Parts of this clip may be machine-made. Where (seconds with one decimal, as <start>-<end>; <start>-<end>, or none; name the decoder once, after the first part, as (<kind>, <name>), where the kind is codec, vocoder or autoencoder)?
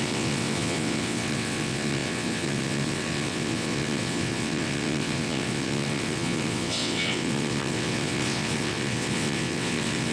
0.0-10.1 (vocoder, WaveNeXt)